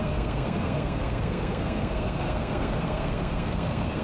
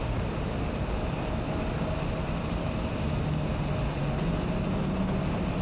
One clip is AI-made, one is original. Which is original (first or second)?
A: second